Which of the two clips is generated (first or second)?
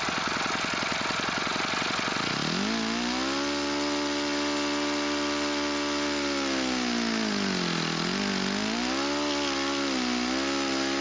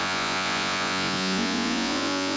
second